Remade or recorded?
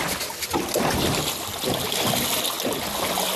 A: recorded